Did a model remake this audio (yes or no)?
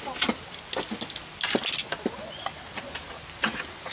no